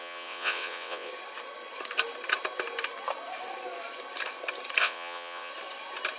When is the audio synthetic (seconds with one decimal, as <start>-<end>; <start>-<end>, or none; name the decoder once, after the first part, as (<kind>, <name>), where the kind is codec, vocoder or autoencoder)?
0.0-1.1 (vocoder, WaveNeXt); 4.8-5.5